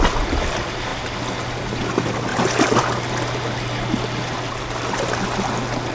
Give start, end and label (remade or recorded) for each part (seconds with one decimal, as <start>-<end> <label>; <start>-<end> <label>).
0.0-5.9 recorded